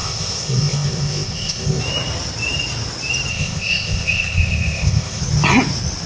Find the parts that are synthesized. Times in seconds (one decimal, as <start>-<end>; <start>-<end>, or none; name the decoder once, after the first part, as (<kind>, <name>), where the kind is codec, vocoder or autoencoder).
0.0-1.8 (codec, ZipCodec); 3.3-5.2